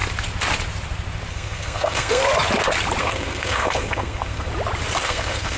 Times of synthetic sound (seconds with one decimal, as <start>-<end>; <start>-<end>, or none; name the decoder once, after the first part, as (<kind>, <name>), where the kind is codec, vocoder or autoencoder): 1.3-2.2 (codec, SNAC); 3.0-4.5; 5.0-5.6